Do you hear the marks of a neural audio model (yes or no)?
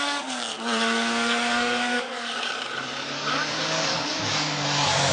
yes